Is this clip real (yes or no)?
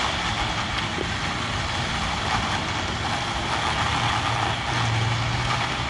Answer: yes